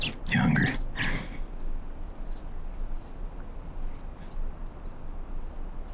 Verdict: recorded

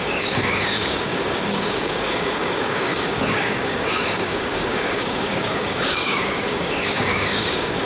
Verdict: remade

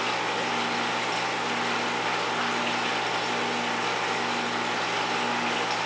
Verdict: recorded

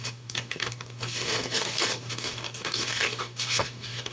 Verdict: remade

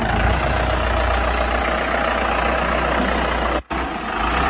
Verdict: recorded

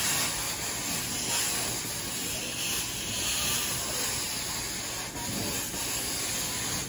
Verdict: recorded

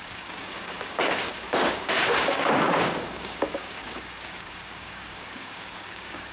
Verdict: remade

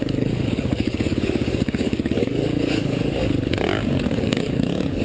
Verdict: remade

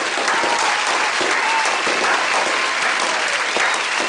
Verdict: recorded